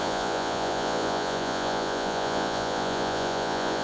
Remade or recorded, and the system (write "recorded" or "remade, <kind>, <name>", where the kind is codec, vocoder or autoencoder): remade, vocoder, Vocos